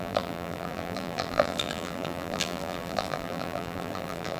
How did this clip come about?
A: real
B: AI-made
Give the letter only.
B